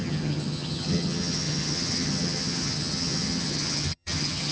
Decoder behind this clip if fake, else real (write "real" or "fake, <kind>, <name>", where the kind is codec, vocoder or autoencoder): fake, vocoder, HiFi-GAN